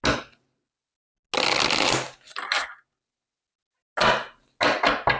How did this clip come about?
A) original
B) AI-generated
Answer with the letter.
A